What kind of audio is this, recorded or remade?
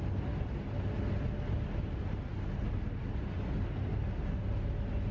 recorded